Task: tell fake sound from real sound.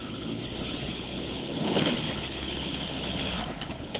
fake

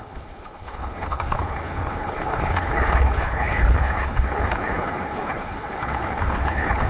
fake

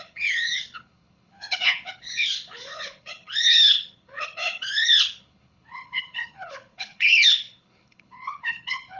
fake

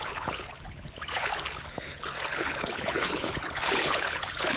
fake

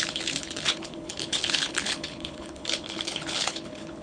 fake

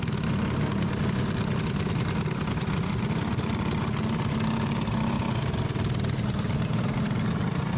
real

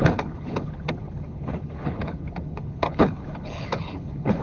fake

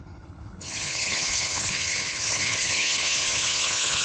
fake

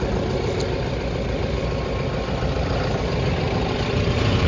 real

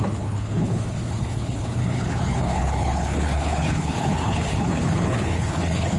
fake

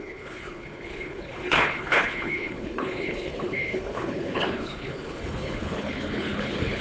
fake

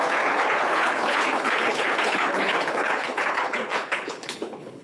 fake